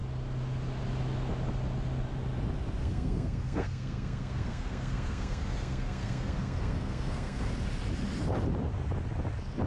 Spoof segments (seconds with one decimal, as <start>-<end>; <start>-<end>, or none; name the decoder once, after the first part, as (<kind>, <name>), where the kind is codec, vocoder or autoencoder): 2.8-7.5 (codec, SNAC)